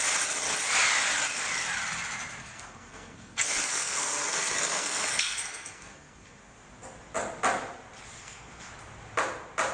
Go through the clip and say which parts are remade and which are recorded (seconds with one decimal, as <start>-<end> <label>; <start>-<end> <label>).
0.0-2.4 recorded; 2.4-6.4 remade; 6.4-8.1 recorded; 8.1-8.7 remade; 8.7-9.7 recorded